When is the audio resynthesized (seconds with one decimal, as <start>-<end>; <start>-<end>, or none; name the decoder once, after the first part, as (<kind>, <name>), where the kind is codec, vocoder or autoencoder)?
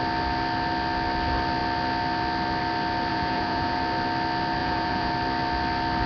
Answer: 3.1-3.8 (vocoder, Vocos); 4.6-5.1